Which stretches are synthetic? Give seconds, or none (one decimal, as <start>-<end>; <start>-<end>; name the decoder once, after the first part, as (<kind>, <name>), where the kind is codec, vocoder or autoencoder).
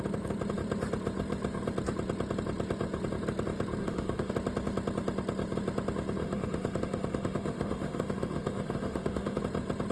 3.8-4.3 (autoencoder, DAC-VAE); 6.2-9.4